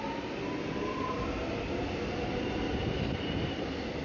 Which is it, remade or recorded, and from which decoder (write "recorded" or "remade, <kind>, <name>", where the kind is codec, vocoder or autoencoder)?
recorded